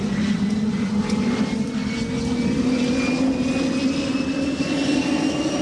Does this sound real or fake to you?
real